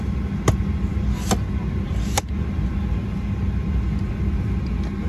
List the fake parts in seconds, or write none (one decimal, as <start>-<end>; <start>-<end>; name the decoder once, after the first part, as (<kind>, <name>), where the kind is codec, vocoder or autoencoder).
none